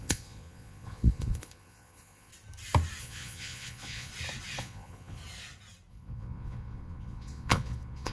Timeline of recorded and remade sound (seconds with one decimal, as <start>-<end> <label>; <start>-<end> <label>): 0.0-2.3 remade; 2.3-3.0 recorded; 3.0-4.1 remade; 4.1-4.6 recorded; 4.6-5.2 remade; 5.2-5.9 recorded; 5.9-8.1 remade